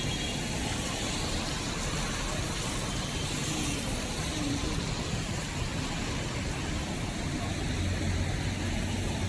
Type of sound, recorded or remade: recorded